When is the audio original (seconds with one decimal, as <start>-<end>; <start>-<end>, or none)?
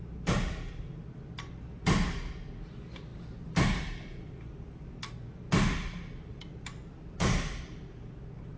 0.0-3.1; 5.1-6.3; 7.6-8.6